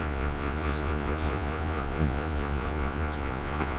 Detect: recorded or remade remade